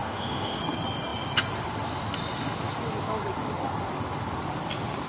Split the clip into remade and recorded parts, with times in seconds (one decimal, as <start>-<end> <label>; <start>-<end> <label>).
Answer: 0.0-0.6 remade; 0.6-5.1 recorded